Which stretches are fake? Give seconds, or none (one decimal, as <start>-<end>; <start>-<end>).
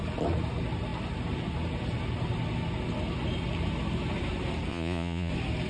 4.7-5.3